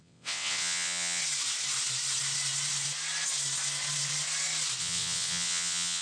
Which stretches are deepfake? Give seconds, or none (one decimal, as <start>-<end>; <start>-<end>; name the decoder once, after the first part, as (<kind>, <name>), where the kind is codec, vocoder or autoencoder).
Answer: 0.0-1.2 (vocoder, WaveNeXt); 4.8-6.0